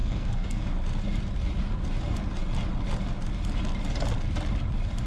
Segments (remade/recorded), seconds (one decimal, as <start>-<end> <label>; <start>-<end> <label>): 0.0-0.7 remade; 0.7-5.1 recorded